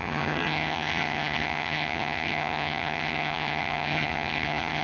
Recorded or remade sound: remade